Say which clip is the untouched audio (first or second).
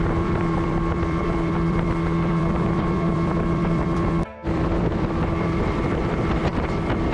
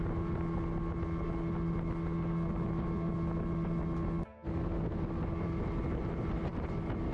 second